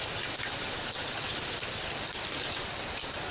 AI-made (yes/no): no